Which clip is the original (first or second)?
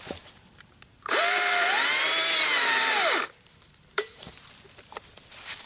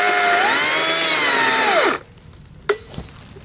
second